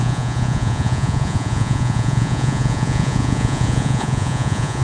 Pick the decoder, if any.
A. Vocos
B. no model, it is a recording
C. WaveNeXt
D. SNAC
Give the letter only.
A